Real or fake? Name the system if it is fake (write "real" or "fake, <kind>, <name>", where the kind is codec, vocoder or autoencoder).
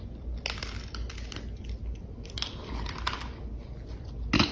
real